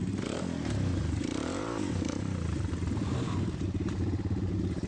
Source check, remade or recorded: remade